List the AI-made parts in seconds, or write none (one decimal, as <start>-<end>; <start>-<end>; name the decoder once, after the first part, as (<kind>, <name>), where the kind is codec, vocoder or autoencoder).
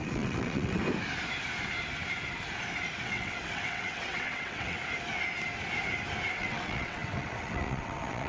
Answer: 0.0-0.8 (vocoder, WaveNeXt); 3.0-4.8; 6.3-8.3